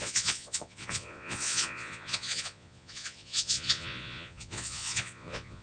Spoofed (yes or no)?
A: yes